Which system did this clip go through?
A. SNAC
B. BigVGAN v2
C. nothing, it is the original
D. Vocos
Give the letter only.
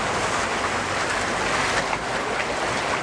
C